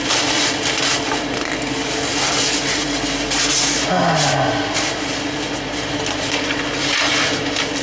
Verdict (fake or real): real